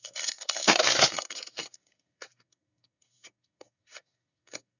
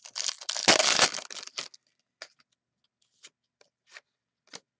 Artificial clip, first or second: first